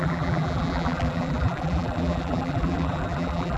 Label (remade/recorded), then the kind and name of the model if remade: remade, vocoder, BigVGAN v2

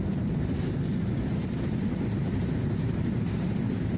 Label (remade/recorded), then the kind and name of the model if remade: remade, vocoder, BigVGAN v2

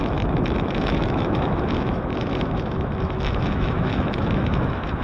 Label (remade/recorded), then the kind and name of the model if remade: remade, autoencoder, DAC-VAE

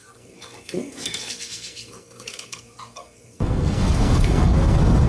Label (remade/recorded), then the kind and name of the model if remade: remade, codec, SNAC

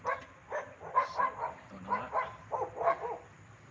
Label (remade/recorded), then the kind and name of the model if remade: recorded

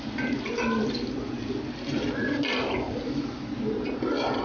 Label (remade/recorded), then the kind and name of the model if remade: recorded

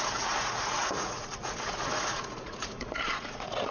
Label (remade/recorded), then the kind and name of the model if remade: remade, vocoder, Vocos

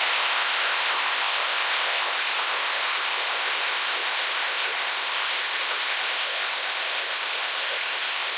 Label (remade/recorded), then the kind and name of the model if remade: remade, codec, ZipCodec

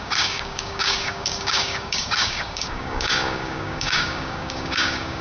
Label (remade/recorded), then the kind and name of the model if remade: remade, codec, DAC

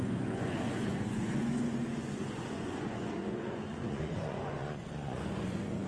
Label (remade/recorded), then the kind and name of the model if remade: remade, vocoder, Vocos